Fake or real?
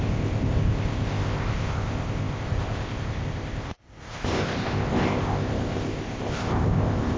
fake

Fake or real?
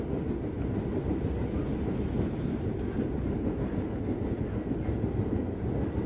real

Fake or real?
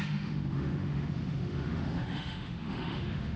fake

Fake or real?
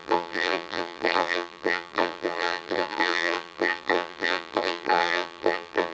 fake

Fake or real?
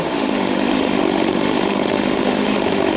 fake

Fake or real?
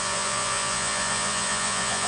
fake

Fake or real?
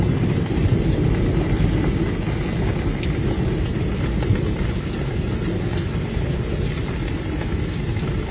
real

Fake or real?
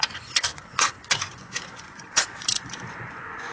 fake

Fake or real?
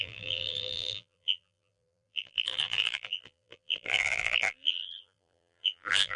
fake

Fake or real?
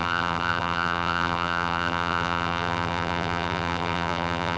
fake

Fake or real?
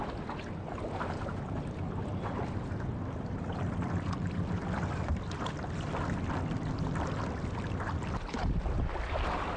real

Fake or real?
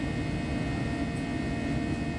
real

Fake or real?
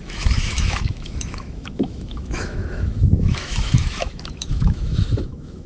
fake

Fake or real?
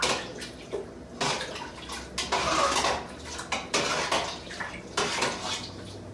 real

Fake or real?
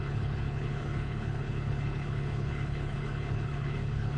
fake